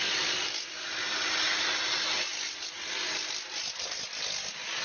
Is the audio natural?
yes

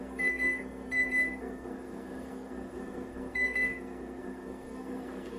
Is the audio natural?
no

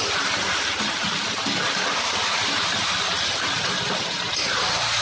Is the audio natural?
yes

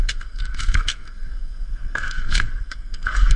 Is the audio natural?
no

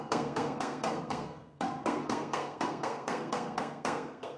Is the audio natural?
no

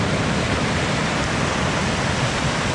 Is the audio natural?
yes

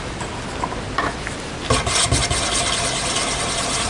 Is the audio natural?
yes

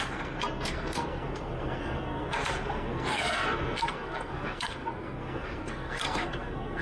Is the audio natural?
no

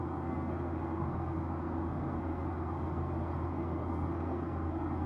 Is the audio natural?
no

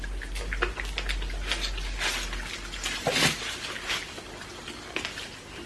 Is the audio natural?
yes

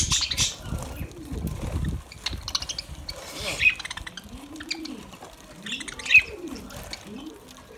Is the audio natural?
yes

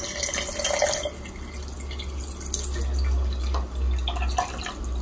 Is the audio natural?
yes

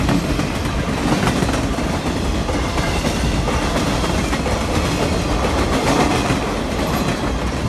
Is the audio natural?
yes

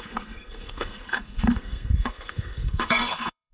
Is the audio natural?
no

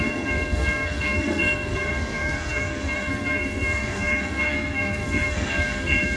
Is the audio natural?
no